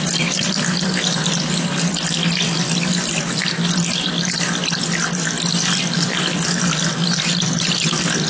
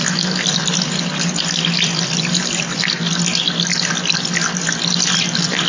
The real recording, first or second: second